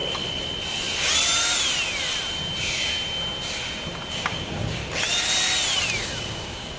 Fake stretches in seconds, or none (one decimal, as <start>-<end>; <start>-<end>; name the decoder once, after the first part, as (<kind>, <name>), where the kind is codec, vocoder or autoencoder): 4.1-4.8 (codec, DAC); 6.0-6.8